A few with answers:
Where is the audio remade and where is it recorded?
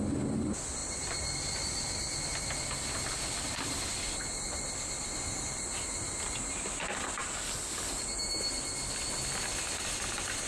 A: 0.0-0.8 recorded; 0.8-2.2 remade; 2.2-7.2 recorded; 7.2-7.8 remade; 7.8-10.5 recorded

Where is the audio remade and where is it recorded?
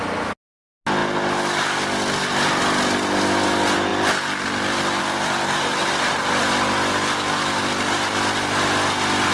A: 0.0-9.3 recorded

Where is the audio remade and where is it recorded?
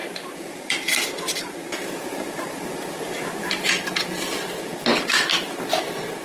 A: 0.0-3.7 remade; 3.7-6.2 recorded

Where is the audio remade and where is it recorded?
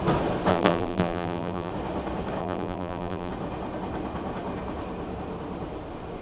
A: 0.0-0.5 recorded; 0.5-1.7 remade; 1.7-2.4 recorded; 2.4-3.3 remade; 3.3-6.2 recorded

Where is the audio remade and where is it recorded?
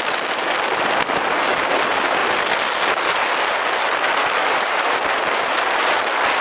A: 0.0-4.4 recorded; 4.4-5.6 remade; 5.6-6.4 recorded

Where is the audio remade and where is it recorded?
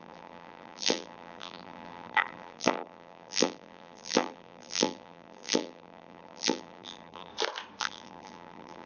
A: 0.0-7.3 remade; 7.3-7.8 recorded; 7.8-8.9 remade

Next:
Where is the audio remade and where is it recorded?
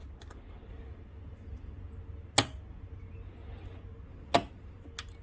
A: 0.0-5.2 recorded